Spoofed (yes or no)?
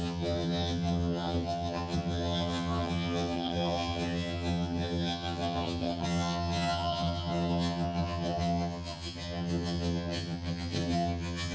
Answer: yes